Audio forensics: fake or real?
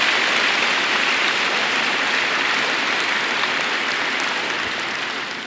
real